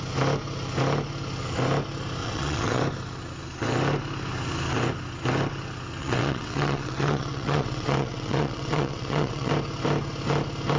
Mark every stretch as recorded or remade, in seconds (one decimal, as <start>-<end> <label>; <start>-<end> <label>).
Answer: 0.0-2.2 recorded; 2.2-2.8 remade; 2.8-6.0 recorded; 6.0-9.5 remade; 9.5-10.8 recorded